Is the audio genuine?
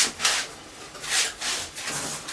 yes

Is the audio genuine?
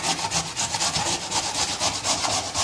yes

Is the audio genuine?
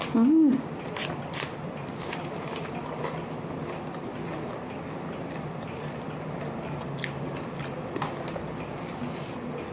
yes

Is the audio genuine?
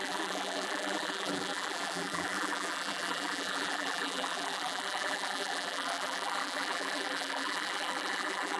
no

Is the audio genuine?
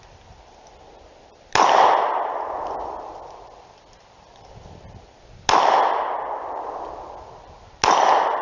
yes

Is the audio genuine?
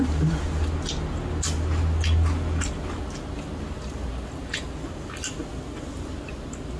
yes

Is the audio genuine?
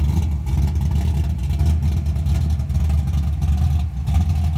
yes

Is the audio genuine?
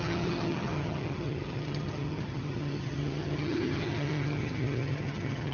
no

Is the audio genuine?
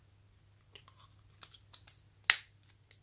yes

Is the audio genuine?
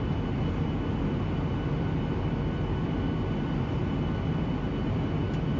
yes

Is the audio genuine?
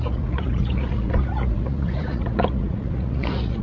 no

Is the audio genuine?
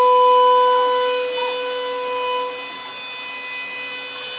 yes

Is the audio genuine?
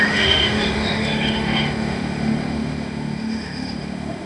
no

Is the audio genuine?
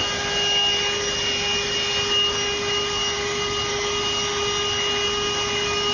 yes